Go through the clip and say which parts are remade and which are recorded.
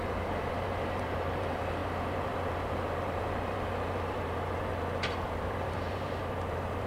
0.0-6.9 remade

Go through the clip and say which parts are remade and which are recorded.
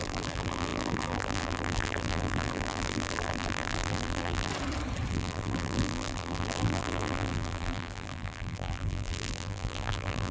0.0-4.5 remade; 4.5-5.1 recorded; 5.1-10.3 remade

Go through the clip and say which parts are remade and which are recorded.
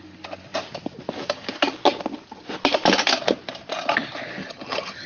0.0-4.4 recorded; 4.4-5.1 remade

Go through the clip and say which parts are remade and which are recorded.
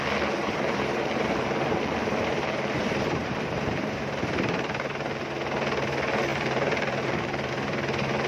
0.0-0.4 recorded; 0.4-4.9 remade; 4.9-6.3 recorded; 6.3-7.5 remade; 7.5-8.3 recorded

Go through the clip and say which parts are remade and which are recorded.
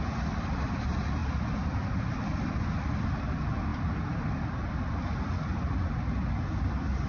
0.0-7.1 remade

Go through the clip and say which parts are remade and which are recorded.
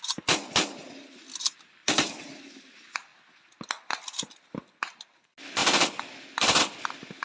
0.0-7.2 recorded